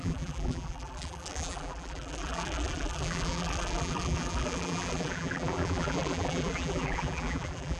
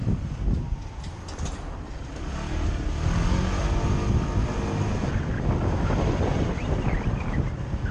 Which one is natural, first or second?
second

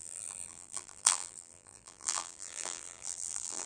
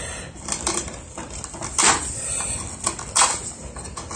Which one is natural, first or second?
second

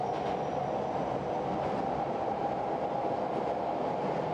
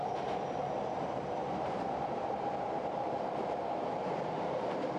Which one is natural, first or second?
first